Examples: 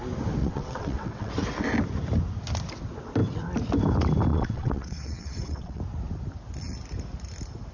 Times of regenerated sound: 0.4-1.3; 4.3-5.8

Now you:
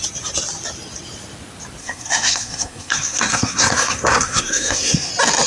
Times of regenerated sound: 1.8-5.1

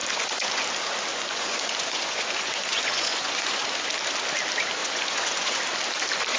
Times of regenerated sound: 0.0-0.6; 1.1-3.6; 4.8-5.6

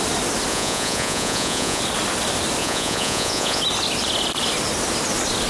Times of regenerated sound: 0.5-1.8; 2.6-3.6

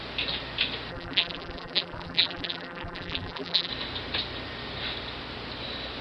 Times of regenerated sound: 0.9-3.7